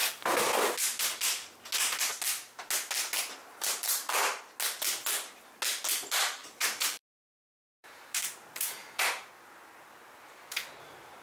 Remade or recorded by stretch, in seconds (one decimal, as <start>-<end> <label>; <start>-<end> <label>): 0.0-3.4 recorded; 3.4-4.4 remade; 4.4-6.4 recorded; 6.4-9.0 remade; 9.0-11.2 recorded